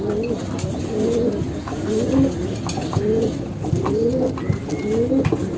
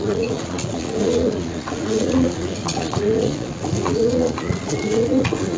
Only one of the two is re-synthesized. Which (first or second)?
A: second